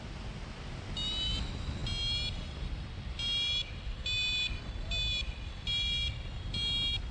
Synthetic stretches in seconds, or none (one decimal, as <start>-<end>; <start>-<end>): none

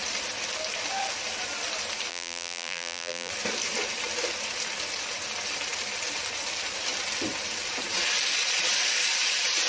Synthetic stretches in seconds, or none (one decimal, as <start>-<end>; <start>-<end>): 2.1-3.3

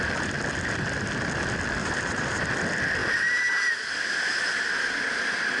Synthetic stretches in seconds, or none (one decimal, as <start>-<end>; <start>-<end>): 1.8-2.5; 3.0-3.7